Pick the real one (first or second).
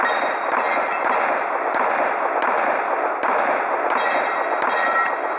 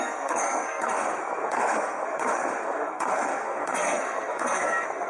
first